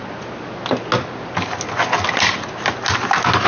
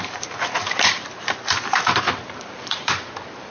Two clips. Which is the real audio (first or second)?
first